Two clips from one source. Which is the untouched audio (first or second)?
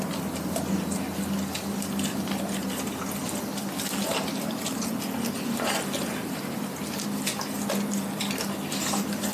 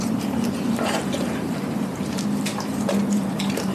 first